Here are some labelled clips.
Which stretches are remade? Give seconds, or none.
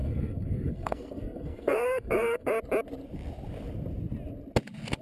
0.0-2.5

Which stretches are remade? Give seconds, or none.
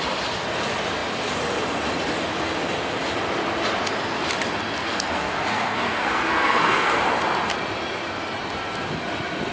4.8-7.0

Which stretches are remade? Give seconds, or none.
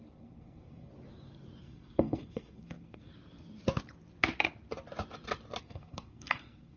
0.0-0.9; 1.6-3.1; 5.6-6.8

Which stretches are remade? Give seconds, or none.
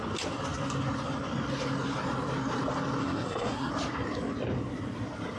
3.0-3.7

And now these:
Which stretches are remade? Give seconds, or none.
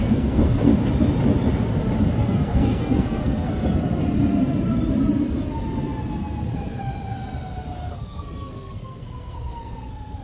0.0-0.7; 2.2-3.5; 6.5-6.9; 7.9-10.2